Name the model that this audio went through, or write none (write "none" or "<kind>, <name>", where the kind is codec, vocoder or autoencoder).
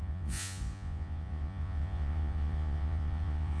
vocoder, Vocos